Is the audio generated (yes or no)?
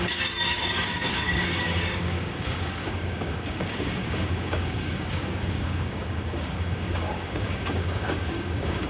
yes